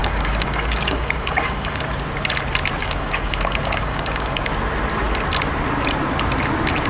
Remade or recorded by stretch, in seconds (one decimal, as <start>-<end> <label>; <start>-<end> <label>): 0.0-1.8 remade; 1.8-2.8 recorded; 2.8-4.5 remade; 4.5-6.9 recorded